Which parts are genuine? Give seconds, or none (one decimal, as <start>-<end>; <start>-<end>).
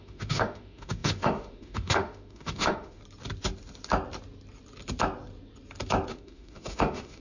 3.0-6.1